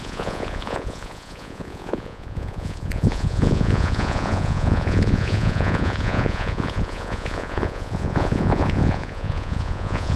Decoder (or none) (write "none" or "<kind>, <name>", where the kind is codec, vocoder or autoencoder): vocoder, Vocos